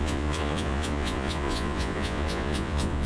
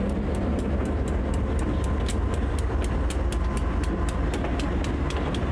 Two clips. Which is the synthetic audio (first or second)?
first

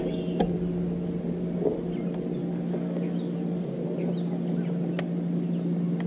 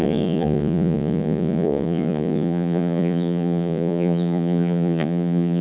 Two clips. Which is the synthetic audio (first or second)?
second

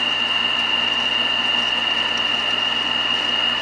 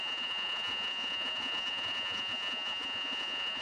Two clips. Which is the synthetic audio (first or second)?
second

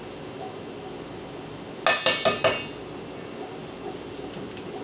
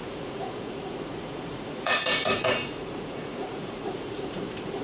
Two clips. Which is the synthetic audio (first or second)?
second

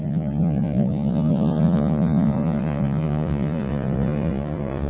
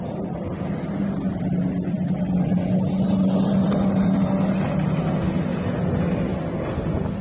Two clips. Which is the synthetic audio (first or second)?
first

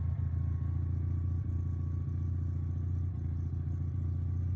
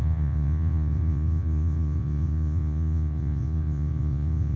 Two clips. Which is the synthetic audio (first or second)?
second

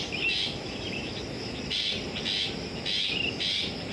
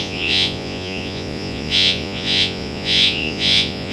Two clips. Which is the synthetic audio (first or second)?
second